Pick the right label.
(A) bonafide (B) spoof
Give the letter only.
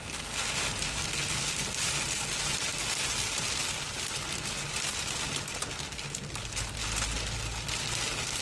A